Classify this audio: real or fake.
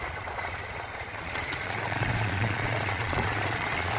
fake